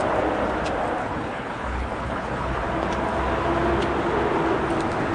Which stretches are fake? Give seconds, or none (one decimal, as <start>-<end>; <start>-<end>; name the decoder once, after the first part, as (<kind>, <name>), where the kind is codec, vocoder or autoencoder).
1.0-2.6 (codec, HILCodec)